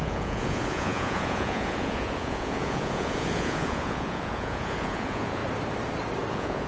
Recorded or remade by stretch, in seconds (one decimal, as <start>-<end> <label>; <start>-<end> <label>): 0.0-5.4 remade; 5.4-6.3 recorded; 6.3-6.7 remade